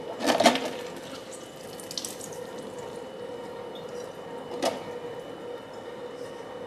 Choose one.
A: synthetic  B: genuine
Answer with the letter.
B